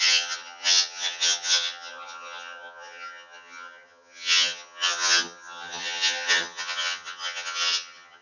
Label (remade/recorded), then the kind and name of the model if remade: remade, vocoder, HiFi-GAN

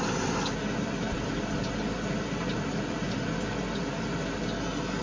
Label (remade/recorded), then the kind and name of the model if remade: recorded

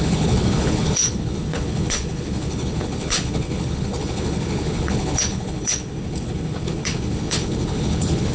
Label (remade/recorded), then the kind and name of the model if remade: remade, codec, HILCodec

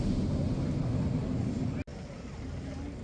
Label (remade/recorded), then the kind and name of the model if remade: recorded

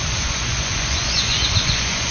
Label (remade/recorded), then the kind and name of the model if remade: remade, vocoder, Vocos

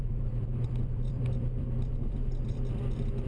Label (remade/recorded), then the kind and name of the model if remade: remade, vocoder, BigVGAN v2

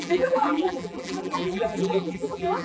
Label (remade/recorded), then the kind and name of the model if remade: remade, vocoder, BigVGAN v2